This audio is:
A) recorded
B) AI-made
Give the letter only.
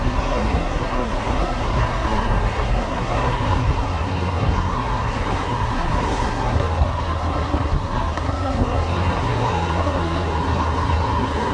B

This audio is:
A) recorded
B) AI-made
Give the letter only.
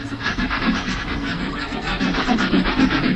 B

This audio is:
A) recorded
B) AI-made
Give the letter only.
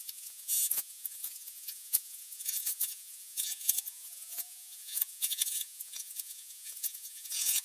B